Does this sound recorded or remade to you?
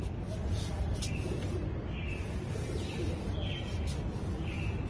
recorded